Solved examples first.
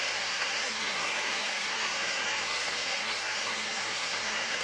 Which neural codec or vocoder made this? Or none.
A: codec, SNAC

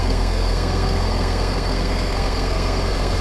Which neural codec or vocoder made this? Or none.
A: codec, SNAC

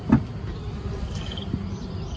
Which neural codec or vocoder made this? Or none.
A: none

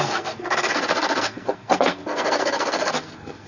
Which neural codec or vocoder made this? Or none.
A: codec, SNAC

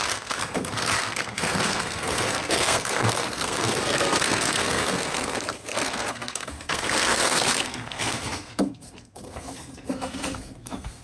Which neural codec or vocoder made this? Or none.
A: codec, SNAC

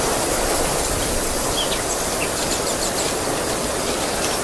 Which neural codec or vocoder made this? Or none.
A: none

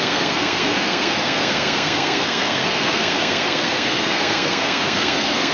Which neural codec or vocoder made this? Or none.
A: codec, SNAC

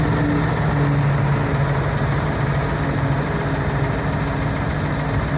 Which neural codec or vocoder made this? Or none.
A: none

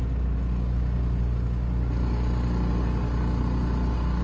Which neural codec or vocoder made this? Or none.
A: none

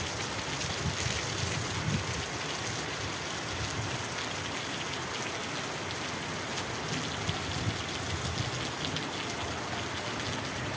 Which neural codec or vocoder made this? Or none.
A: none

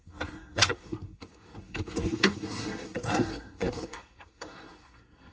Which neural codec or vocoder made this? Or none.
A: codec, SNAC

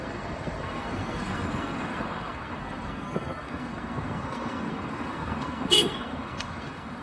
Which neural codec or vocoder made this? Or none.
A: codec, SNAC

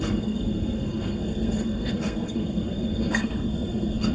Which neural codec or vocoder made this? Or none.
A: codec, SNAC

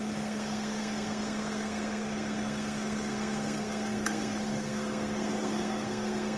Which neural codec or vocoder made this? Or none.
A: codec, SNAC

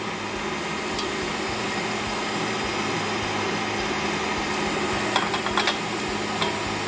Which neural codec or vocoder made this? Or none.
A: none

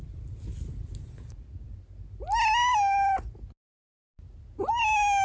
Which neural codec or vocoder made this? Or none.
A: none